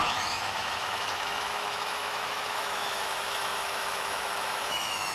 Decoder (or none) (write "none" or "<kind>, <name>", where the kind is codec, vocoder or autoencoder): autoencoder, DAC-VAE